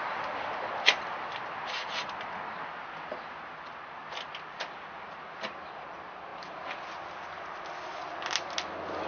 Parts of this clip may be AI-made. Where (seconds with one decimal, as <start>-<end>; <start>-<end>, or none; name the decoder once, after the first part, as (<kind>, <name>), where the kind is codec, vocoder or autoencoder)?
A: none

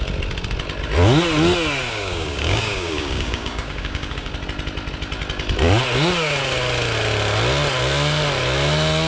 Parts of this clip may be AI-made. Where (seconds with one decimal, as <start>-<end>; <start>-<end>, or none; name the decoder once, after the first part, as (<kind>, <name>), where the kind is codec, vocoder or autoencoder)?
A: 1.8-4.3 (codec, DAC)

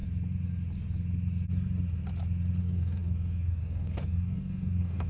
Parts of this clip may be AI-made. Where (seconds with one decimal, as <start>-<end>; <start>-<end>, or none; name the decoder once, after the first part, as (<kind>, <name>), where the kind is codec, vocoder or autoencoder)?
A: 2.6-5.1 (codec, DAC)

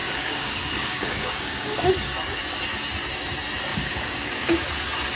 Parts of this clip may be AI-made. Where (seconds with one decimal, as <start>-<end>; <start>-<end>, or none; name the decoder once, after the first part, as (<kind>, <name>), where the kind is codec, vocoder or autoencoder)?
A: 0.0-1.9 (codec, DAC); 3.7-4.7

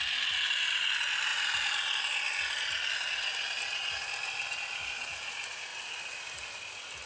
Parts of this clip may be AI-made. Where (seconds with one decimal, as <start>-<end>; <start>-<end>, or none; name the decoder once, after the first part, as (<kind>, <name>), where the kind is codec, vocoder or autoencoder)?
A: none

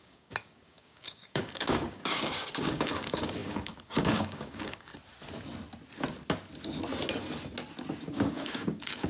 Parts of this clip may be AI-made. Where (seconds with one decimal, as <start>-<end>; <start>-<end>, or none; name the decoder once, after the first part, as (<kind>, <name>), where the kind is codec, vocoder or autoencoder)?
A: 0.0-4.9 (codec, DAC); 8.0-9.1